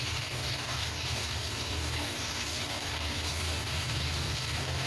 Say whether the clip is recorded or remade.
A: remade